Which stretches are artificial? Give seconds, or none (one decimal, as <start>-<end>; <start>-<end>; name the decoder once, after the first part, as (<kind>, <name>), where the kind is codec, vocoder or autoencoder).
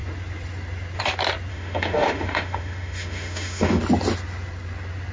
1.5-3.8 (autoencoder, DAC-VAE)